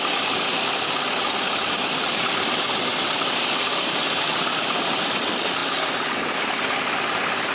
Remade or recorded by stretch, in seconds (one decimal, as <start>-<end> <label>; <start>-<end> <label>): 0.0-7.5 remade